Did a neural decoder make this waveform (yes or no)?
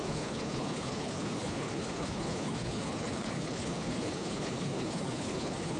yes